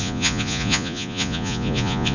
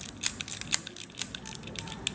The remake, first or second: first